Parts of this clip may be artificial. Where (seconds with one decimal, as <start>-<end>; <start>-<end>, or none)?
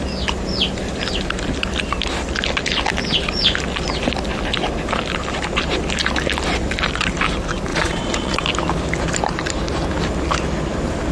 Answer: 7.7-8.4